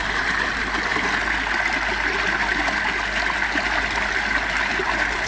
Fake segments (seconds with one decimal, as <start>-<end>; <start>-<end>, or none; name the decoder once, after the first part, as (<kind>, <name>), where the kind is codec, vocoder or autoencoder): none